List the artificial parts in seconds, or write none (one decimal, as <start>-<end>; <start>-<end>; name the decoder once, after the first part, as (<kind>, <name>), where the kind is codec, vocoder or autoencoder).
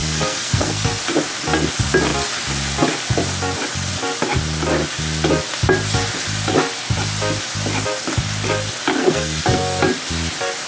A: 0.0-1.0 (codec, SNAC); 8.9-9.8